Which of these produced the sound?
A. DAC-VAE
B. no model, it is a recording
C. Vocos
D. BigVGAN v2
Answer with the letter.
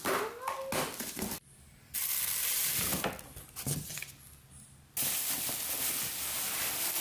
B